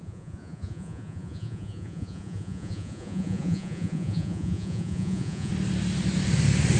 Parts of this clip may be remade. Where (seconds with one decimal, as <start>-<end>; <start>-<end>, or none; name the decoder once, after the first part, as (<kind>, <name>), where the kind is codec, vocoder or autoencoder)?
0.0-5.5 (vocoder, Vocos)